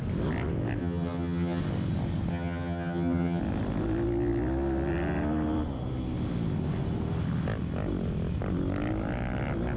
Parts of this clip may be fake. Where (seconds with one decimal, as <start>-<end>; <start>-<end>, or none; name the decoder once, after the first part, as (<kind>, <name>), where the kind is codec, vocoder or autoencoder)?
0.8-1.6 (vocoder, HiFi-GAN); 2.3-3.4